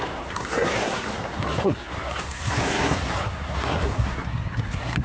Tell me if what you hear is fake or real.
fake